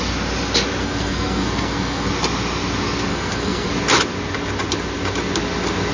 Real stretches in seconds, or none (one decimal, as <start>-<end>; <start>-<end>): 0.0-0.8; 2.1-3.1; 3.7-5.9